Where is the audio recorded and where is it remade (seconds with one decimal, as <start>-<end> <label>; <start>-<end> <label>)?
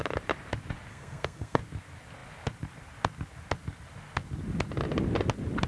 0.0-0.9 recorded; 0.9-1.6 remade; 1.6-5.7 recorded